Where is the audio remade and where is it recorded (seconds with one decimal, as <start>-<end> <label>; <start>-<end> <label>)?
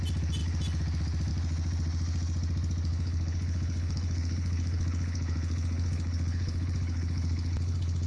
0.0-2.9 recorded; 2.9-8.1 remade